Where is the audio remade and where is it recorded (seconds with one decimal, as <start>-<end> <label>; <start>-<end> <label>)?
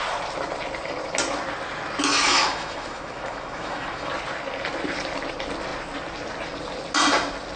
0.0-2.1 recorded; 2.1-4.1 remade; 4.1-7.6 recorded